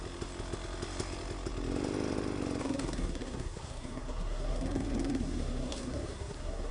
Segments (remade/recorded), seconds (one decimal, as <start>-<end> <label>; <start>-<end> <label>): 0.0-2.6 recorded; 2.6-6.7 remade

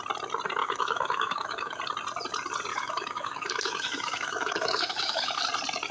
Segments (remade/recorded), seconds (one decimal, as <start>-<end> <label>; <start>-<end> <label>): 0.0-0.6 recorded; 0.6-1.8 remade; 1.8-2.7 recorded; 2.7-5.4 remade; 5.4-5.9 recorded